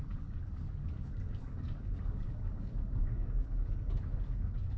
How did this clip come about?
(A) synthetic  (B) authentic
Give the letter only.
A